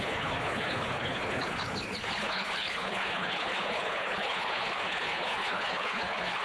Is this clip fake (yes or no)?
yes